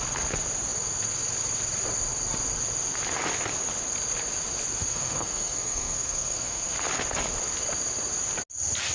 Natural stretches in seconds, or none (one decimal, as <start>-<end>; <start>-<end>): 0.0-4.9; 6.7-8.9